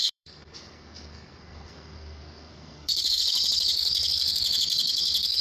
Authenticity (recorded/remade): remade